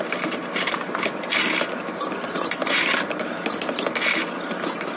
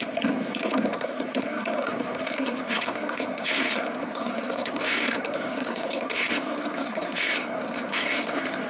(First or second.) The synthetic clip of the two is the second